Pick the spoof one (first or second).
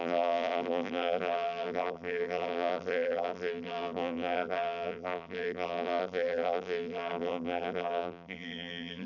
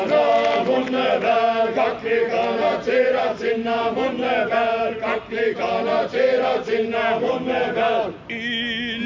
first